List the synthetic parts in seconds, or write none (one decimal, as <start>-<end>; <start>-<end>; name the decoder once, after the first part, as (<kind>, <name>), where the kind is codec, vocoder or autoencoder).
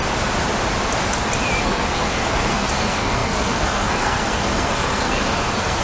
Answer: 1.6-5.8 (codec, SNAC)